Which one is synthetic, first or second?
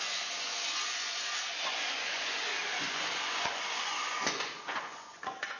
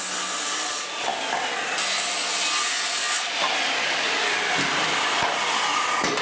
first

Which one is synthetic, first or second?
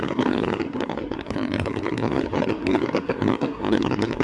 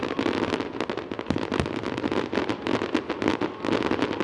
first